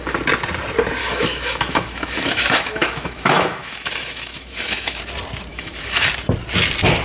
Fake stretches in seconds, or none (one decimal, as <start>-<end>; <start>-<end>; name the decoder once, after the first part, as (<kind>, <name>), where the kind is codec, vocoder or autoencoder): 1.0-5.0 (autoencoder, DAC-VAE); 5.5-6.1